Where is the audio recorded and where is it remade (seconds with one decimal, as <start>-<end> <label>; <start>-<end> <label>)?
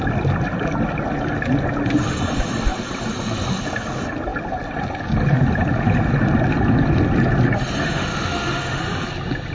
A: 0.0-7.8 recorded; 7.8-8.8 remade; 8.8-9.5 recorded